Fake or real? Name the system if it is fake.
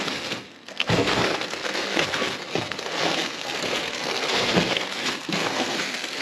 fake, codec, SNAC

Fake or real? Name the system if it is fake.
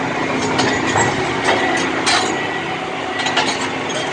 real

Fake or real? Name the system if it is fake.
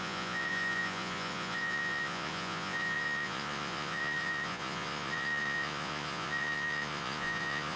fake, vocoder, Vocos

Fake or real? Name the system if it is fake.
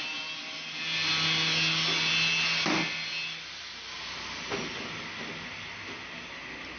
real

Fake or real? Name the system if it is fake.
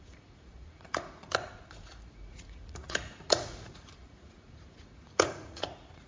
fake, vocoder, Vocos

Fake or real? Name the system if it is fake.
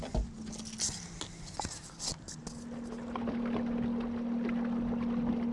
real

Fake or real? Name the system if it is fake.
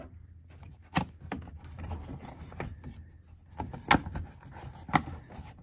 real